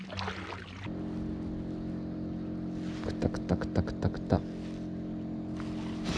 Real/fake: real